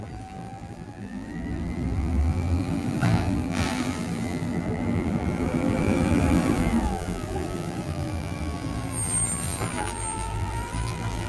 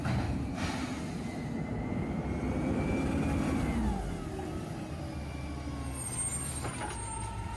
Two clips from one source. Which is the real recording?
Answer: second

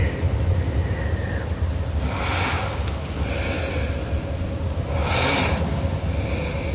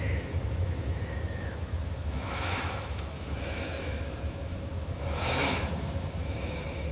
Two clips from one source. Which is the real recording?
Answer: first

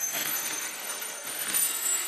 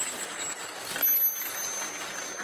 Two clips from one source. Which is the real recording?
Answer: second